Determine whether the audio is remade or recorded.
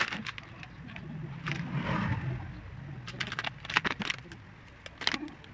recorded